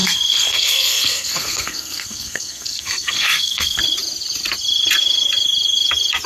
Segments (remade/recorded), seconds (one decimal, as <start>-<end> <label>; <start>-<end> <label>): 0.0-3.8 remade; 3.8-6.3 recorded